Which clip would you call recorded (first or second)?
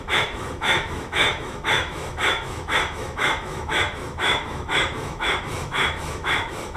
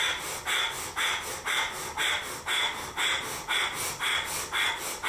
second